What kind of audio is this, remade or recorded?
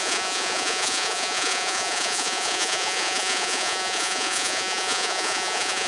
remade